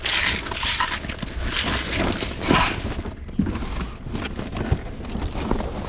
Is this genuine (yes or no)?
yes